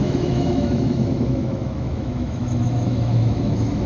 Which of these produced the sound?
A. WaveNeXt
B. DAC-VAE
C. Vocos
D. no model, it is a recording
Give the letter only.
B